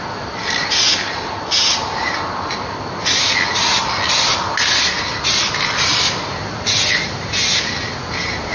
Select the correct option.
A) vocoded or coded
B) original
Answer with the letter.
B